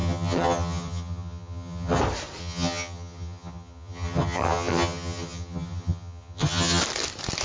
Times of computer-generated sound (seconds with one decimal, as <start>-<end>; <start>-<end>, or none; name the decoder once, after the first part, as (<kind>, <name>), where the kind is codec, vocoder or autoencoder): 0.0-2.0 (vocoder, HiFi-GAN); 2.4-6.8